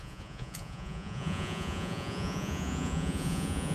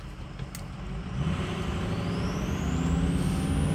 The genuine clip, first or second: second